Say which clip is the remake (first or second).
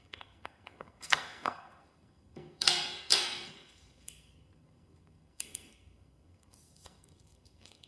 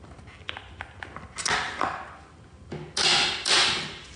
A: first